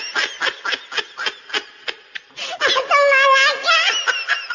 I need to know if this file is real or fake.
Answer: real